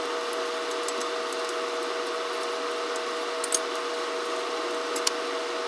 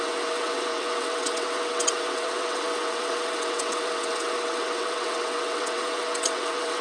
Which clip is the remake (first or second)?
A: second